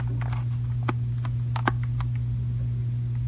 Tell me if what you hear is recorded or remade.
recorded